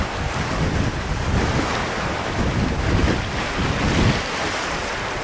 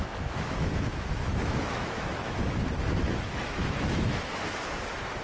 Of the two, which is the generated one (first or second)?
second